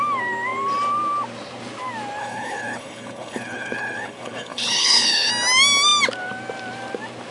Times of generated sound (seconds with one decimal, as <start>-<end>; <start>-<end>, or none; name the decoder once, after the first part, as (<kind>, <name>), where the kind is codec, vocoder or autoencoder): 2.2-5.3 (codec, HILCodec)